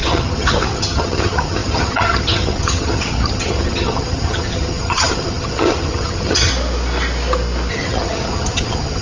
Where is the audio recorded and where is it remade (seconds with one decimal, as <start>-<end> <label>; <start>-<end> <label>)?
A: 0.0-6.5 remade; 6.5-7.7 recorded; 7.7-9.0 remade